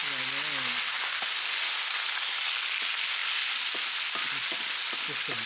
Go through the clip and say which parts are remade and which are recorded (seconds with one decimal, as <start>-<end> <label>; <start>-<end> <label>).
0.0-5.5 recorded